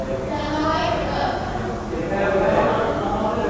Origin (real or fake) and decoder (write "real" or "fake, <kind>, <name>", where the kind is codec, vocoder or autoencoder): real